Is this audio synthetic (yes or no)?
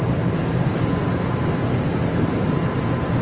no